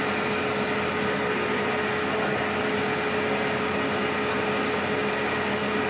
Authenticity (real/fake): real